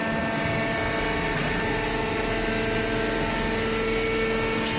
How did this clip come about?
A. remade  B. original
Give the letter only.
B